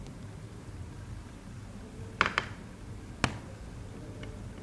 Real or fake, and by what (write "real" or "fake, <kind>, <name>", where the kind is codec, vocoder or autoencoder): real